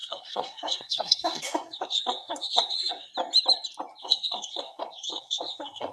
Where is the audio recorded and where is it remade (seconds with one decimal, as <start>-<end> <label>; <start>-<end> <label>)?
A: 0.0-3.1 remade; 3.1-4.0 recorded; 4.0-5.9 remade